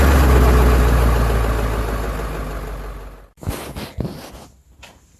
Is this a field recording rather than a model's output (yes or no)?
yes